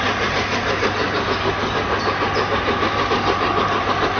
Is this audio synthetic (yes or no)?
no